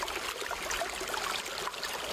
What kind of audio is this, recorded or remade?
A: recorded